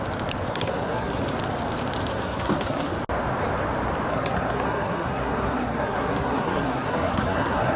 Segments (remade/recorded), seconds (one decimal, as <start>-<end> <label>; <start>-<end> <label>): 0.0-0.5 recorded; 0.5-1.2 remade; 1.2-2.1 recorded; 2.1-2.9 remade; 2.9-4.1 recorded; 4.1-7.8 remade